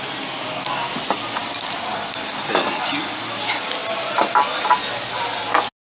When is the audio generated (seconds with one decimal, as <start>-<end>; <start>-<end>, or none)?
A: 1.4-2.9